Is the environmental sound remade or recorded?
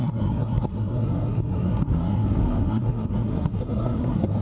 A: remade